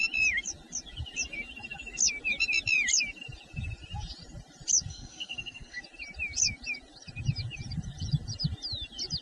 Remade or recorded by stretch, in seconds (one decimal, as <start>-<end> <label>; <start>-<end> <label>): 0.0-4.9 recorded; 4.9-5.8 remade; 5.8-9.2 recorded